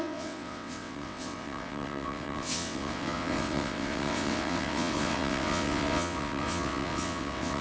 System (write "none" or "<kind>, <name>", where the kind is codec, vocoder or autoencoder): vocoder, WaveNeXt